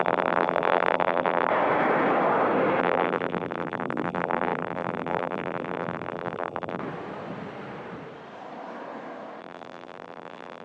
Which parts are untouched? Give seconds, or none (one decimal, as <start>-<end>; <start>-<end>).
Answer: 1.5-2.8; 6.8-9.4

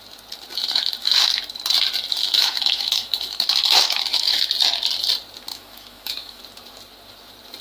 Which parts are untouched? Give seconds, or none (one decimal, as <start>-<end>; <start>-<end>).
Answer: 0.0-0.6; 1.4-2.1; 4.5-5.5; 6.4-7.6

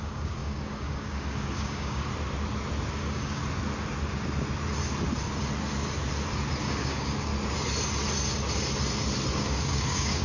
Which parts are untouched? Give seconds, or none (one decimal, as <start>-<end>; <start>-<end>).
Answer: 2.1-2.9; 3.4-6.6; 7.3-9.3